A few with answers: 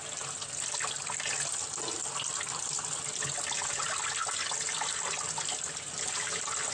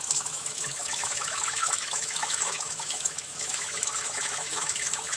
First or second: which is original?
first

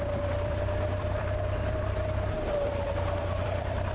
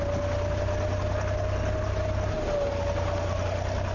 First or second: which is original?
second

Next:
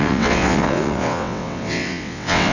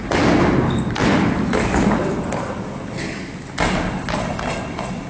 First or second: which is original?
second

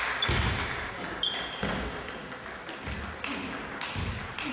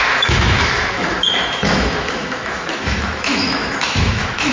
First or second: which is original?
first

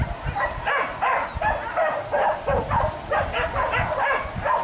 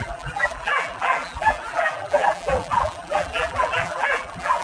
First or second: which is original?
first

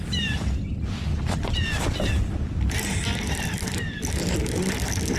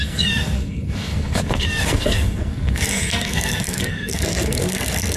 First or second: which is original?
first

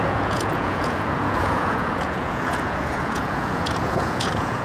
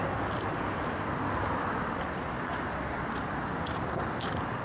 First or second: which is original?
second